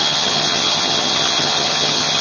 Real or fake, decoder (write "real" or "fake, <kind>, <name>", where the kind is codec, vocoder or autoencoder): fake, vocoder, HiFi-GAN